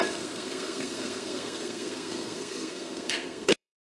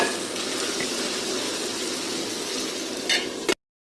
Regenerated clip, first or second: first